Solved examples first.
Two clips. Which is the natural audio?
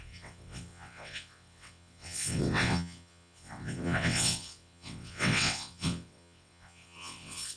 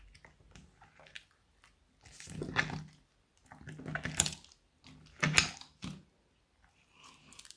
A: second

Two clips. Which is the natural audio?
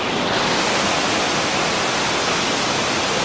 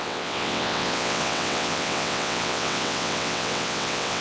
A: first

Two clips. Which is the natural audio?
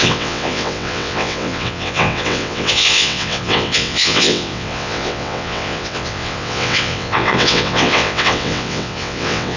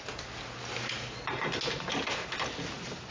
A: second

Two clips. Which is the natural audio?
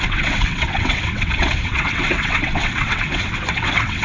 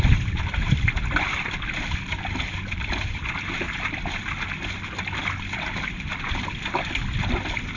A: second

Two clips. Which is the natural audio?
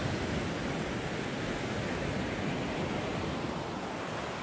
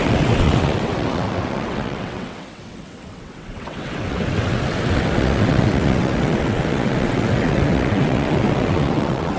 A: first